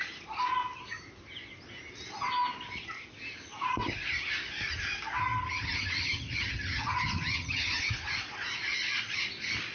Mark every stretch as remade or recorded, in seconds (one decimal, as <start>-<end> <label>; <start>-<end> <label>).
0.0-5.3 recorded; 5.3-7.8 remade; 7.8-9.7 recorded